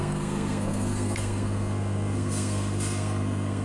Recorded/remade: remade